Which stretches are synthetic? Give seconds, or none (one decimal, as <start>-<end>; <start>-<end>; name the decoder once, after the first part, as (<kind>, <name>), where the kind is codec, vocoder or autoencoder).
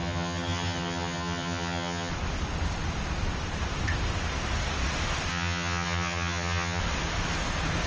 0.0-2.1 (vocoder, HiFi-GAN); 5.3-6.8